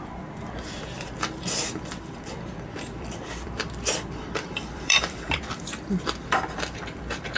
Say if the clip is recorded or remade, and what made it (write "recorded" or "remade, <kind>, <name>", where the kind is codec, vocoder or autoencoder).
remade, vocoder, BigVGAN v2